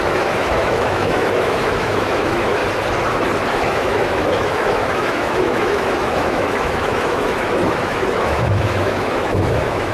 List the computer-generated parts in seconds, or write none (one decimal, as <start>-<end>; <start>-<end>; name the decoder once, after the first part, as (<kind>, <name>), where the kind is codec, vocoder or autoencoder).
0.0-2.6 (autoencoder, DAC-VAE); 3.5-9.9